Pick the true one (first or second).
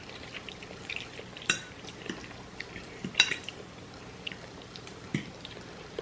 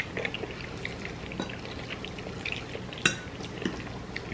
second